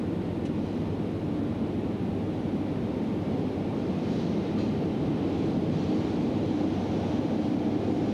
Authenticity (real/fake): real